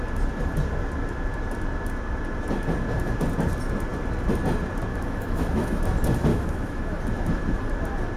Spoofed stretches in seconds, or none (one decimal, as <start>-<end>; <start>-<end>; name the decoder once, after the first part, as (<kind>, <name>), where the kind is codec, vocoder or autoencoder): 4.9-5.8 (autoencoder, DAC-VAE); 6.3-7.0